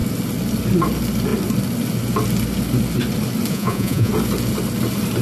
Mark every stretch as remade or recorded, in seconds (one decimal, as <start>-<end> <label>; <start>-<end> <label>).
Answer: 0.0-3.5 recorded; 3.5-4.1 remade; 4.1-5.2 recorded

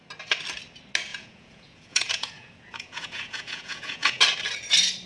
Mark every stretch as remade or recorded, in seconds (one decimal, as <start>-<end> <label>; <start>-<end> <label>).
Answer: 0.0-1.1 recorded; 1.1-4.2 remade; 4.2-5.1 recorded

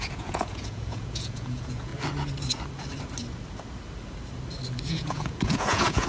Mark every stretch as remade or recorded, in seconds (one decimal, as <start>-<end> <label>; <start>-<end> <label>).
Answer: 0.0-1.9 remade; 1.9-4.9 recorded; 4.9-6.1 remade

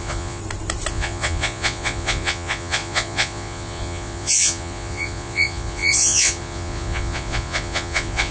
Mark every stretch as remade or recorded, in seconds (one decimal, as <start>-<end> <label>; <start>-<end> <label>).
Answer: 0.0-0.4 remade; 0.4-0.9 recorded; 0.9-8.3 remade

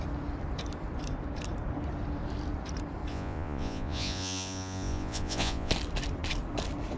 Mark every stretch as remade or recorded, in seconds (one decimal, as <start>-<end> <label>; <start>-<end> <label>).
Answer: 0.0-3.1 recorded; 3.1-5.7 remade; 5.7-7.0 recorded

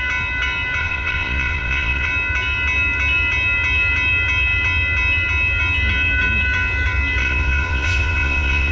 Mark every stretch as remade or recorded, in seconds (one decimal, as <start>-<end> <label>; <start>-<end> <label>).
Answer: 0.0-0.8 recorded; 0.8-2.1 remade; 2.1-7.2 recorded; 7.2-8.7 remade